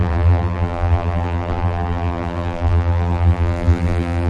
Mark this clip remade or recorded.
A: remade